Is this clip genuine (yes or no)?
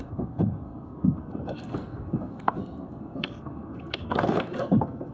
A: no